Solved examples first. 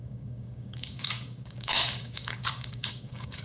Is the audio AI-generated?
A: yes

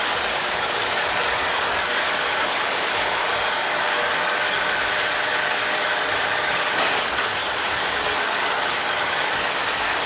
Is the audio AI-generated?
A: yes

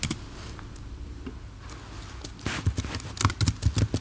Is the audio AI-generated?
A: no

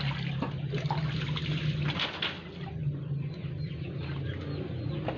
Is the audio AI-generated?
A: no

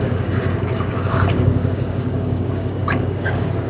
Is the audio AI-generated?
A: yes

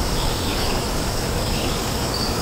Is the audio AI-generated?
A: yes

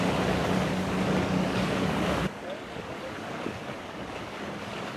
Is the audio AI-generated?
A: yes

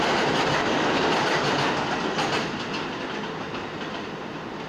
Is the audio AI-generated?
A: no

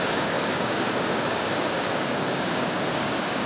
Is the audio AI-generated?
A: yes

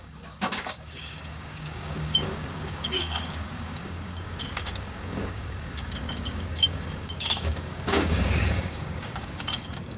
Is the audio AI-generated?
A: yes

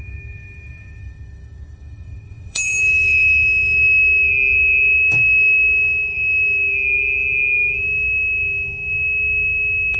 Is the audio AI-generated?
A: yes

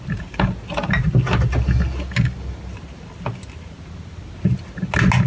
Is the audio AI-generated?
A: no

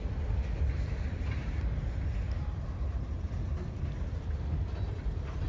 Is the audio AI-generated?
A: no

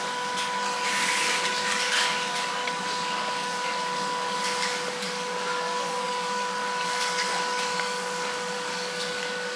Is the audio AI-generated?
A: yes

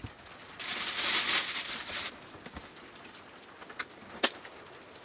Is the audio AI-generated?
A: no